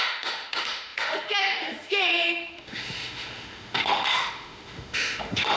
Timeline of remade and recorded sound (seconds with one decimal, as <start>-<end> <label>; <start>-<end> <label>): 0.0-5.6 remade